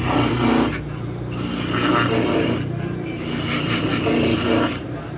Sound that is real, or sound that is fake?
real